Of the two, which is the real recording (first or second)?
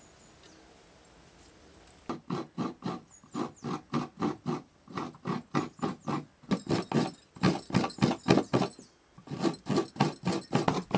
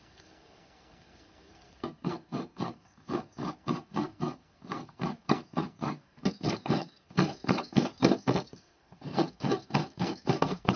first